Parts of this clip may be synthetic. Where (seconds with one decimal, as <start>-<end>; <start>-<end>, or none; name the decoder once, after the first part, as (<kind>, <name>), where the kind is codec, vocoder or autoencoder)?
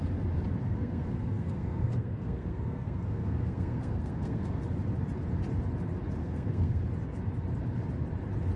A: 0.7-4.6 (codec, SNAC); 6.2-6.8